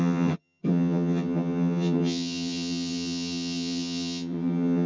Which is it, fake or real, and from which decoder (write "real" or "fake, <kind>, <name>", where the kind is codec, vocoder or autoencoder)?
fake, vocoder, HiFi-GAN